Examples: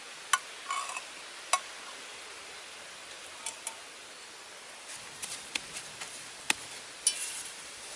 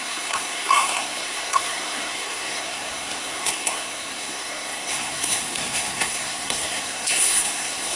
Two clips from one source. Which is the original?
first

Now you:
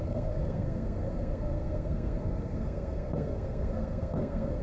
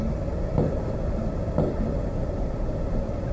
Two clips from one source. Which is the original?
second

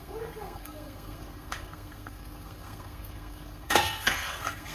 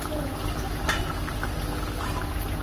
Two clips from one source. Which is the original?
second